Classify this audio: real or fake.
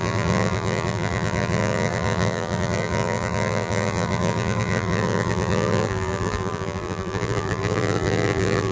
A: fake